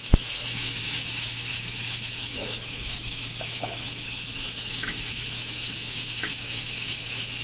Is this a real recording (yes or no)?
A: no